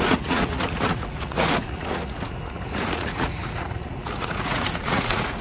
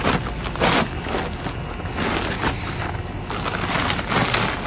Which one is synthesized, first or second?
first